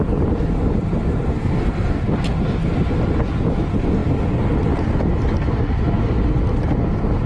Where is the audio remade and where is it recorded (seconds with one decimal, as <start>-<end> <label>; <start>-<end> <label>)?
0.0-1.3 recorded; 1.3-2.0 remade; 2.0-7.3 recorded